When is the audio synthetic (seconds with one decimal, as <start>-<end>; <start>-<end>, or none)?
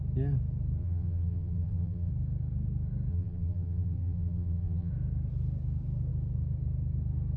0.8-2.1; 3.1-4.9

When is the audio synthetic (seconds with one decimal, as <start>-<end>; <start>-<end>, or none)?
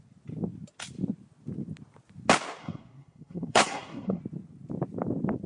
2.6-4.2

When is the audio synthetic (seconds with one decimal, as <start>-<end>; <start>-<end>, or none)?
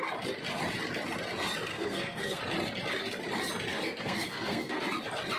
1.7-2.4; 3.7-4.8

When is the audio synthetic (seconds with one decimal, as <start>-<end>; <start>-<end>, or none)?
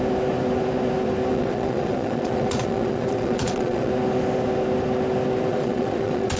1.3-3.9; 5.5-6.4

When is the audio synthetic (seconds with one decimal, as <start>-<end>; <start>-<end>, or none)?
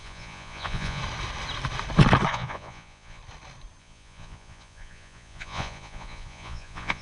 0.0-1.0; 2.3-3.2; 3.8-7.0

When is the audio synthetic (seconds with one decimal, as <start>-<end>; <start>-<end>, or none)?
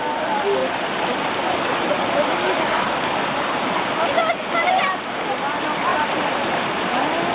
5.9-6.7